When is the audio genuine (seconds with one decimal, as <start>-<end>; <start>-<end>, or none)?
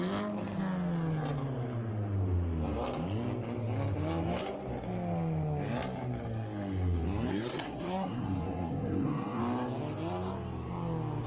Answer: 0.0-7.3; 9.4-11.3